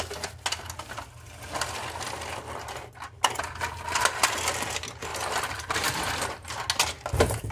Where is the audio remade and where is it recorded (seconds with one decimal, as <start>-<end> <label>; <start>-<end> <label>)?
0.0-5.1 recorded; 5.1-5.9 remade; 5.9-7.5 recorded